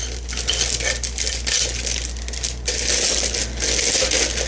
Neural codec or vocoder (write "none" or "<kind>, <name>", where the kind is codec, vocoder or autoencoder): none